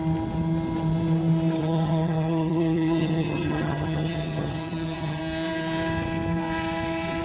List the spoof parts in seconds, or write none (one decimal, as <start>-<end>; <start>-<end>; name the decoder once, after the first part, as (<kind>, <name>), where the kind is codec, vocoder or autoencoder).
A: 1.6-5.2 (vocoder, HiFi-GAN)